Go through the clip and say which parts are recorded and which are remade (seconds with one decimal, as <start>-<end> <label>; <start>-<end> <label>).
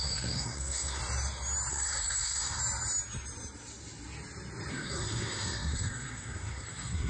0.0-1.0 remade; 1.0-1.7 recorded; 1.7-2.6 remade; 2.6-4.7 recorded; 4.7-7.1 remade